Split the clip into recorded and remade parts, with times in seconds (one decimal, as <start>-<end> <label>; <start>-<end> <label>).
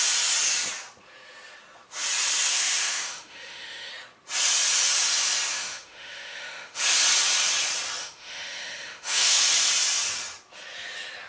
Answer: 0.0-2.5 recorded; 2.5-3.9 remade; 3.9-5.5 recorded; 5.5-6.8 remade; 6.8-8.0 recorded; 8.0-9.4 remade; 9.4-11.3 recorded